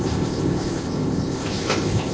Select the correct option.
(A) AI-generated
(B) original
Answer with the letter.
A